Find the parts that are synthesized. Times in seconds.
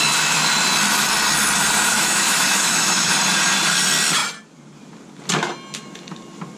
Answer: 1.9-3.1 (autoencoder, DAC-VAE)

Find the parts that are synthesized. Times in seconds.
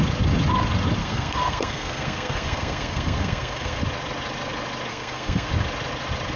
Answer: 1.0-3.8 (codec, SNAC); 4.9-5.5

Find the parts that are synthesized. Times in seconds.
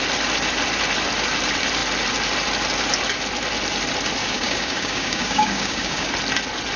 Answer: 4.2-6.1 (codec, DAC)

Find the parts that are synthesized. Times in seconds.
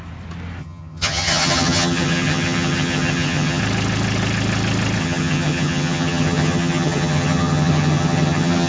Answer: 0.6-3.6 (vocoder, HiFi-GAN); 5.0-8.7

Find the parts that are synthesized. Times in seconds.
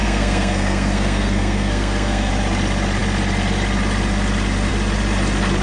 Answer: 0.0-2.3 (codec, SNAC)